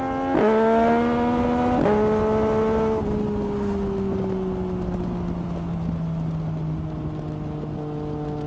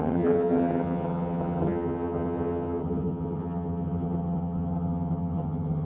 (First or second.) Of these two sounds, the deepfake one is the second